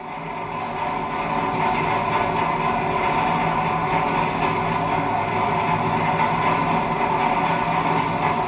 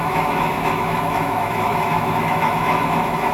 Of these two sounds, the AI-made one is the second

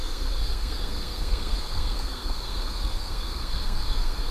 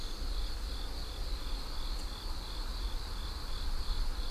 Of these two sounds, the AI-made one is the first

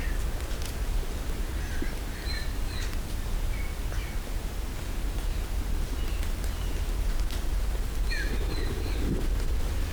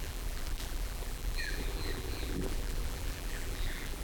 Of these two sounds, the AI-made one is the second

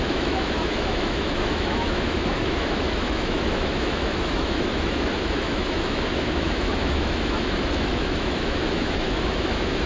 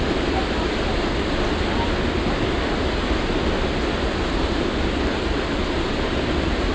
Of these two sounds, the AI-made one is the first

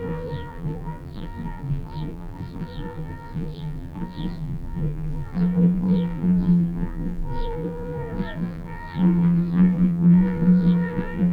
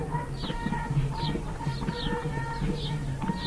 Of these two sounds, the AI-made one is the first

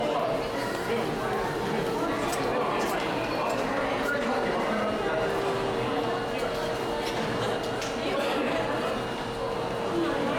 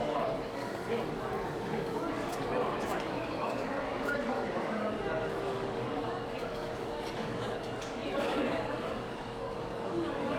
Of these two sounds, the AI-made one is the second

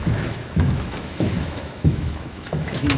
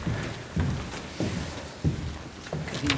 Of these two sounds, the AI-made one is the first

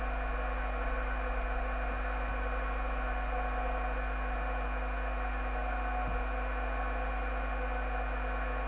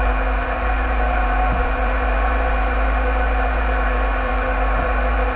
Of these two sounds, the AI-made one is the second